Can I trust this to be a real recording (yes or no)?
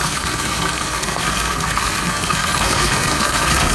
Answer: no